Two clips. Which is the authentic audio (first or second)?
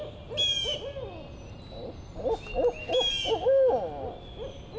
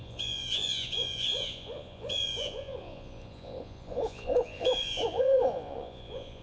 first